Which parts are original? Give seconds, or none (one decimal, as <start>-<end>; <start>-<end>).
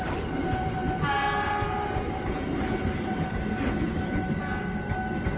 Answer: 0.0-5.4